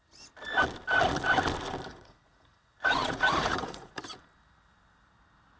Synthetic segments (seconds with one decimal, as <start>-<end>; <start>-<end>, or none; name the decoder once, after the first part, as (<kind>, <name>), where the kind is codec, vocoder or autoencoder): 1.9-4.0 (vocoder, Vocos)